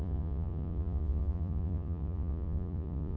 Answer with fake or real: fake